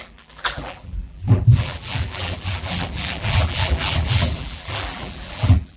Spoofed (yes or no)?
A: yes